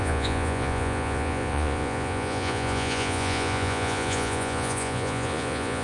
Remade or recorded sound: remade